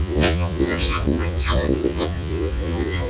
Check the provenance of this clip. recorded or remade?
remade